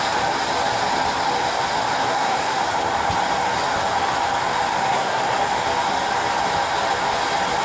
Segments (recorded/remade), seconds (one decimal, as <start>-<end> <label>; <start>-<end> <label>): 0.0-2.1 recorded; 2.1-2.6 remade; 2.6-4.8 recorded; 4.8-5.4 remade; 5.4-7.6 recorded